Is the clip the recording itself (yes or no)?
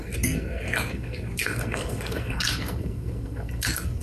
no